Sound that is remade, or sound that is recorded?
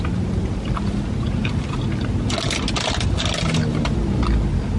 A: recorded